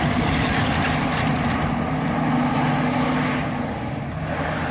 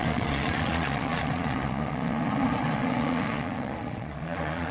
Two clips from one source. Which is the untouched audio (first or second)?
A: first